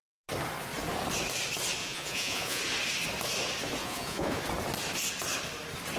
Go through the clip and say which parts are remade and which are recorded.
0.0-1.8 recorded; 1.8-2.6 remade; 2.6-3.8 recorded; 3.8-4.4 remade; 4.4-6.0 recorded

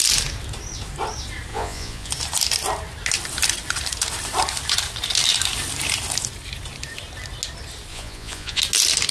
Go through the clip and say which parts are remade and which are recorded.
0.0-1.5 recorded; 1.5-2.1 remade; 2.1-7.9 recorded; 7.9-8.6 remade; 8.6-9.1 recorded